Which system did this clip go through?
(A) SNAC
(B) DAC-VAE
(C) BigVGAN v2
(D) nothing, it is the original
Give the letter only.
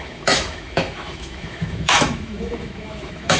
B